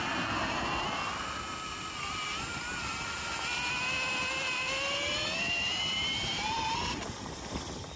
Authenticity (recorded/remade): recorded